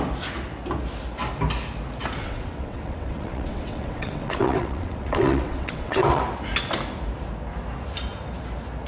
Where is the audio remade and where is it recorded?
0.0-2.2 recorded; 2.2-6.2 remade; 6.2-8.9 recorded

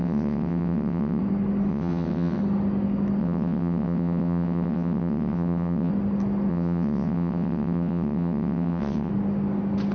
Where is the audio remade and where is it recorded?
0.0-1.2 remade; 1.2-1.7 recorded; 1.7-2.4 remade; 2.4-3.2 recorded; 3.2-5.9 remade; 5.9-6.5 recorded; 6.5-9.1 remade; 9.1-9.9 recorded

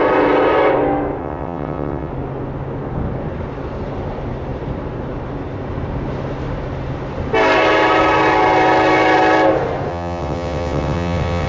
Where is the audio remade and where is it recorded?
0.0-1.2 recorded; 1.2-2.1 remade; 2.1-9.9 recorded; 9.9-11.5 remade

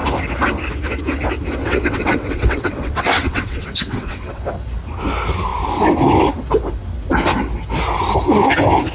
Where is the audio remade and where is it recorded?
0.0-1.6 recorded; 1.6-4.5 remade; 4.5-8.9 recorded

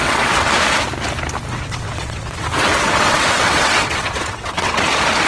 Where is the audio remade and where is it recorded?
0.0-0.5 remade; 0.5-1.5 recorded; 1.5-4.7 remade; 4.7-5.3 recorded

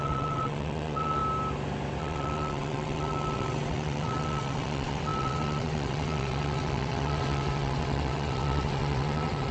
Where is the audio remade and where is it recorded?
0.0-1.2 remade; 1.2-2.0 recorded; 2.0-9.5 remade